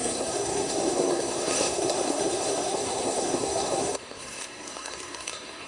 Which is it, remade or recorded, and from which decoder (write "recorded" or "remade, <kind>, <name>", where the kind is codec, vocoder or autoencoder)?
remade, codec, SNAC